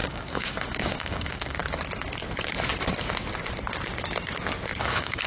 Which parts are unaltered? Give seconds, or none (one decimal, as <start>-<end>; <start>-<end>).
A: 1.6-4.8